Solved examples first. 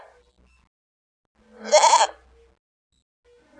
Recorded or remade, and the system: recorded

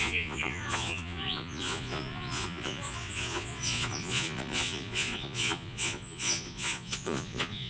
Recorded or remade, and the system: remade, vocoder, Vocos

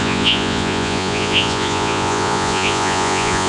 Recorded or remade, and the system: remade, vocoder, Vocos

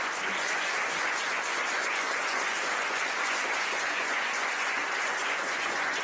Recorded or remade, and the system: remade, vocoder, Vocos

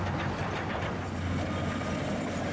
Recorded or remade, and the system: recorded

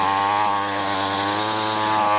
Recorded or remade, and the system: recorded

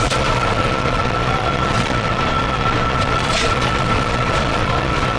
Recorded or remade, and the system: remade, vocoder, Vocos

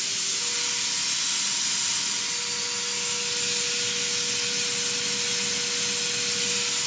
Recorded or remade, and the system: recorded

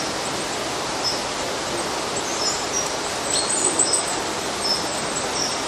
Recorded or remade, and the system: recorded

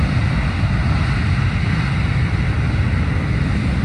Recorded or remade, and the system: recorded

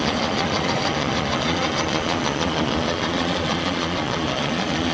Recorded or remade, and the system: remade, vocoder, Vocos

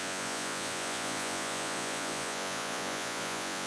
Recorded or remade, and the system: remade, vocoder, Vocos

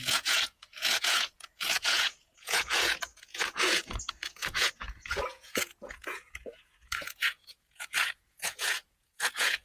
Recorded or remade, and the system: remade, vocoder, Vocos